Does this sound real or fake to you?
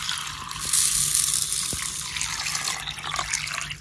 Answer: real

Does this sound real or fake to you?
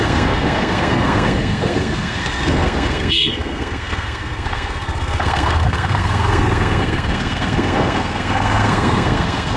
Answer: fake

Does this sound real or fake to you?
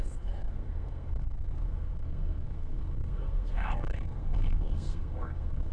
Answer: fake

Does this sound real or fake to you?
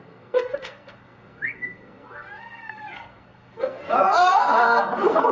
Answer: fake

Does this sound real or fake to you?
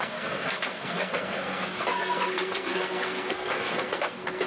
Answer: fake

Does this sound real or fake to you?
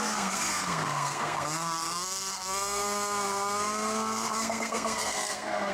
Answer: fake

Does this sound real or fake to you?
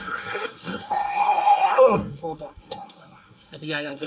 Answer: fake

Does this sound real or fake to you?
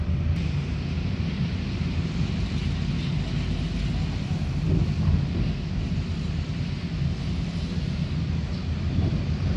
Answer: real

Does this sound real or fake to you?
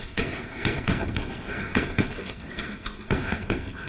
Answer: fake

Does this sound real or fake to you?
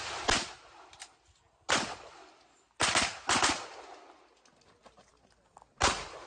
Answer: real